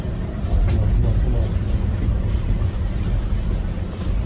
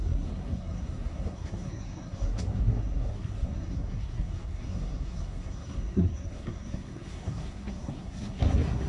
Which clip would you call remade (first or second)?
second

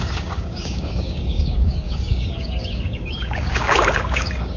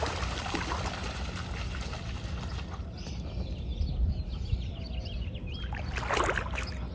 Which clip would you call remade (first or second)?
first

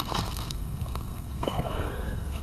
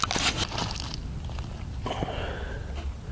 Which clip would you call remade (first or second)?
first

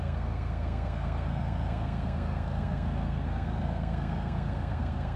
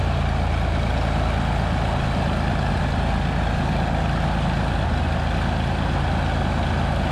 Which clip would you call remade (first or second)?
first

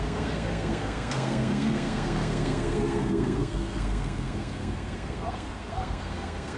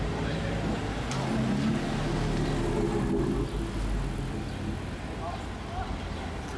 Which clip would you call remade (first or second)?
first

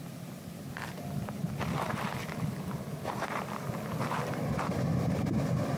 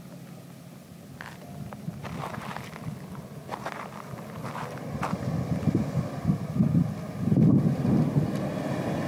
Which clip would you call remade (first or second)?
first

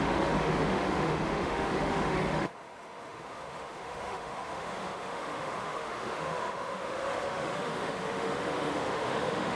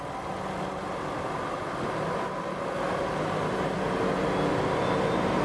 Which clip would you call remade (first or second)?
first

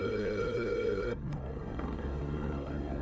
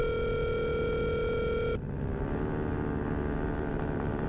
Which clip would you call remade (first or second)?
first